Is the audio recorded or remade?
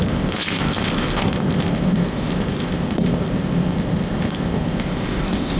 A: remade